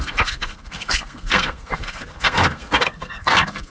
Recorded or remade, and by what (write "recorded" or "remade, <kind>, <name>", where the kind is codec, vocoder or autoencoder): remade, codec, SNAC